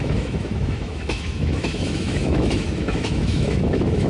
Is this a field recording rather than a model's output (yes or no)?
no